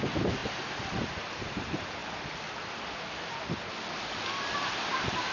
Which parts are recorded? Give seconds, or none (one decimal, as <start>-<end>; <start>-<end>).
2.0-5.3